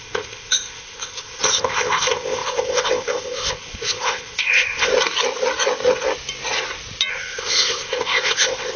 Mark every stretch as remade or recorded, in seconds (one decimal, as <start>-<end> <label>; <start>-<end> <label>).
0.0-4.9 remade; 4.9-7.1 recorded; 7.1-8.8 remade